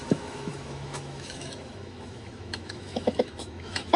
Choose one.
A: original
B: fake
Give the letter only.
B